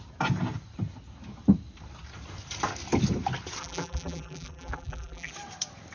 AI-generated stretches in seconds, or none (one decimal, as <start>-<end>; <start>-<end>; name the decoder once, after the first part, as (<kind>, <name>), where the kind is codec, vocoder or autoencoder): 3.6-5.3 (vocoder, BigVGAN v2)